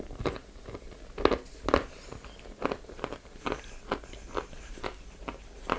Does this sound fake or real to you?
real